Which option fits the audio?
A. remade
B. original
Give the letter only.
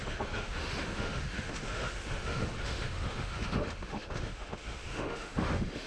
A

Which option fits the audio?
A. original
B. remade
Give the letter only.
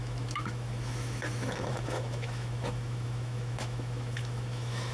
B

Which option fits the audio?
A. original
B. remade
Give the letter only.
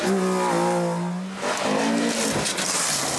A